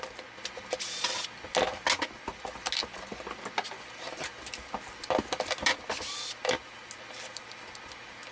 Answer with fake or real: real